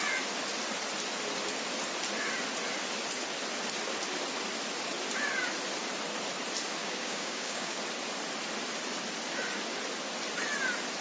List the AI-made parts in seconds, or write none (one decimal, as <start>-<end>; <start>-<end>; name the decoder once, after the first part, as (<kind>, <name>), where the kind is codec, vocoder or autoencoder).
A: 6.8-7.8 (codec, DAC)